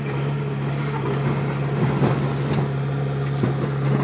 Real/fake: real